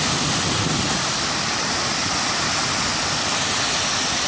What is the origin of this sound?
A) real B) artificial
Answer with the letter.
A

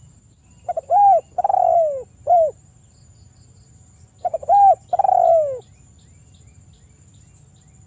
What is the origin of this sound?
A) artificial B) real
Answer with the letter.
B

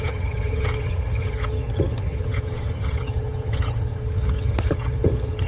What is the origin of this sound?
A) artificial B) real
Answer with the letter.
A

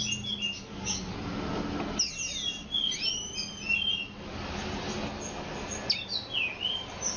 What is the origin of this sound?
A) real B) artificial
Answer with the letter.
A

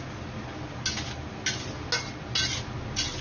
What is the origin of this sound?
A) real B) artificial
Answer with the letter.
A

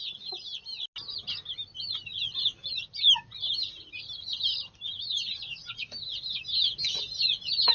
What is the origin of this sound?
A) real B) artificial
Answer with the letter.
A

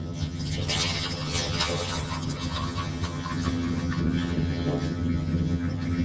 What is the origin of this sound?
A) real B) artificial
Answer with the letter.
B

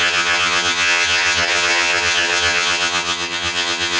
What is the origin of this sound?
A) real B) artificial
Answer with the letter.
B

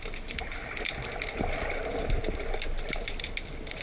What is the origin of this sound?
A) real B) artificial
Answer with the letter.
A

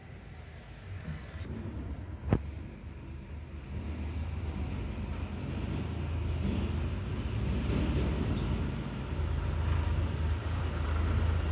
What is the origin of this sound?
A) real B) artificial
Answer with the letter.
A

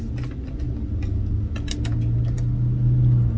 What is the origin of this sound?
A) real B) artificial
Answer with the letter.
A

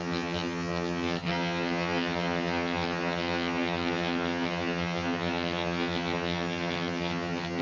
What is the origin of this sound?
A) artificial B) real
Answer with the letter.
A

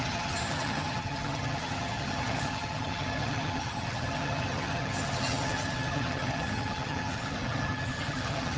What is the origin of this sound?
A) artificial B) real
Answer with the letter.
A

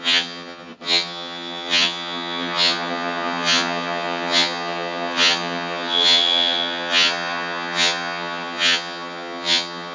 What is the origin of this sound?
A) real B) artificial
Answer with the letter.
B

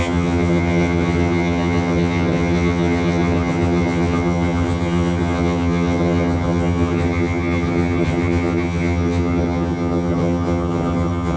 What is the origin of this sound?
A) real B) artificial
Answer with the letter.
B